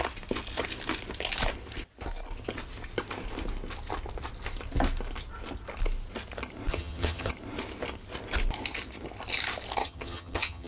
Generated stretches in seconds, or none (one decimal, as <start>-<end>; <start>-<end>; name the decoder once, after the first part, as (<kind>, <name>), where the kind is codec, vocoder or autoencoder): 6.7-7.3 (vocoder, HiFi-GAN); 9.8-10.7